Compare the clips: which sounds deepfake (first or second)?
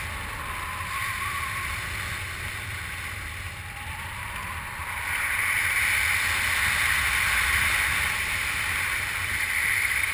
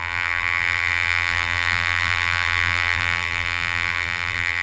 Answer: second